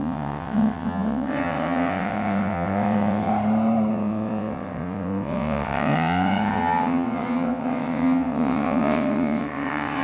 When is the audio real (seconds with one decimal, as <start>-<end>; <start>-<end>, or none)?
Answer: 3.3-3.9